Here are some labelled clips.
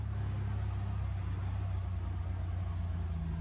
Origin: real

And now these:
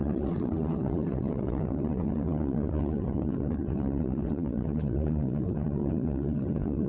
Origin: fake